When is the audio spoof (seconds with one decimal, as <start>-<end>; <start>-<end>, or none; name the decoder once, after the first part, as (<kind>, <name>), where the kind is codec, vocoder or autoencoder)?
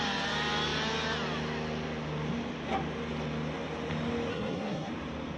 4.3-4.9 (codec, SNAC)